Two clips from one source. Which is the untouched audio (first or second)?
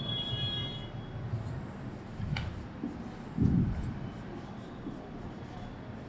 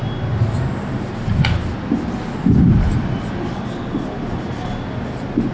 second